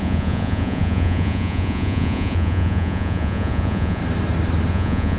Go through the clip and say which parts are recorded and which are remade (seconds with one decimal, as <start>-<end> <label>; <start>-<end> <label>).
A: 0.0-4.0 remade; 4.0-4.7 recorded; 4.7-5.2 remade